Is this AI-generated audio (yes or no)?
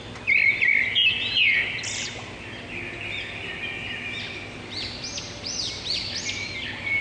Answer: no